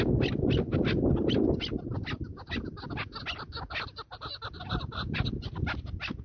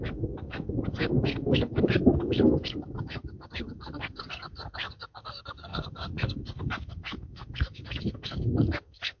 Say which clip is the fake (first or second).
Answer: second